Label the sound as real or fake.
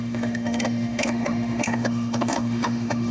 fake